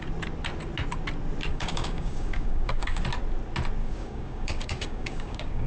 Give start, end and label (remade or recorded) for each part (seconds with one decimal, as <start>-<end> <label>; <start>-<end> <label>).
0.0-1.5 recorded; 1.5-3.0 remade; 3.0-3.8 recorded; 3.8-5.7 remade